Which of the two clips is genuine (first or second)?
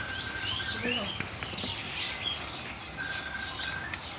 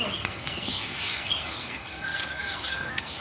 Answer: first